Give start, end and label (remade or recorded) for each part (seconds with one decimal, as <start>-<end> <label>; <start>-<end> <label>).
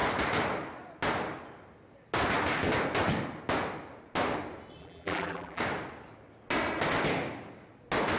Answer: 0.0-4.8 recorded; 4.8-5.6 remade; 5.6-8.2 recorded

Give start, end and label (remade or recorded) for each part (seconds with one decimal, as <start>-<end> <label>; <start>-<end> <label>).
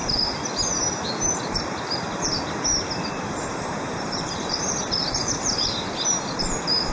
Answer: 0.0-3.1 recorded; 3.1-6.9 remade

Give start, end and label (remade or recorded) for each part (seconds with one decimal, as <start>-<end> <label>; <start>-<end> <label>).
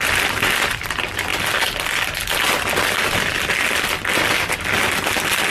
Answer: 0.0-5.5 recorded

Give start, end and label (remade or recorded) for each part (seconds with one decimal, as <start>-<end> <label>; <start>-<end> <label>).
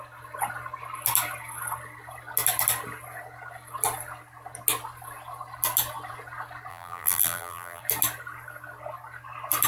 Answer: 0.0-6.7 recorded; 6.7-7.8 remade; 7.8-9.7 recorded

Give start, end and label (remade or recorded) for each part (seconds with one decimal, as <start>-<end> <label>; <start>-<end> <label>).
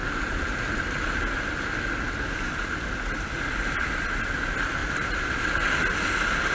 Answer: 0.0-4.8 recorded; 4.8-5.5 remade; 5.5-6.5 recorded